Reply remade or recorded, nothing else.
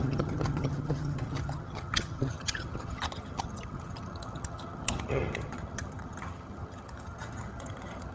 remade